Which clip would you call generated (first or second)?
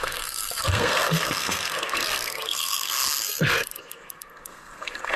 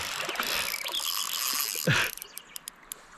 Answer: first